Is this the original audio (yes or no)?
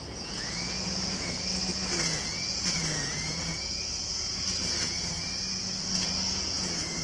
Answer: no